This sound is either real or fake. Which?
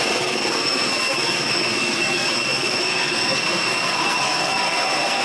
fake